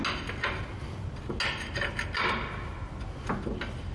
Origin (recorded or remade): recorded